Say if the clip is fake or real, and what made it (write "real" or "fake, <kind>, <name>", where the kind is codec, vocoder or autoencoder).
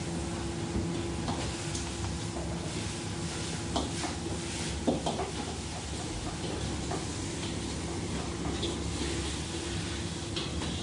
real